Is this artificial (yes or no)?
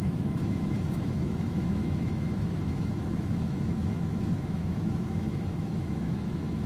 yes